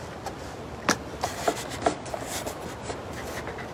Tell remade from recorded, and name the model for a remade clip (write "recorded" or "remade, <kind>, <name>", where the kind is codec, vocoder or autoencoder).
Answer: recorded